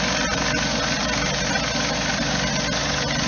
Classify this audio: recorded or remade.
recorded